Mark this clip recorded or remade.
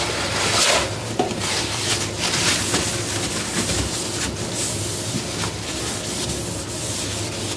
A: recorded